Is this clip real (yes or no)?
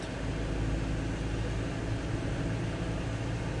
yes